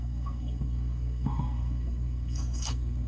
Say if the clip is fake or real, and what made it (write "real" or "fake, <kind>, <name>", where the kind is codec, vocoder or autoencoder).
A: fake, codec, SNAC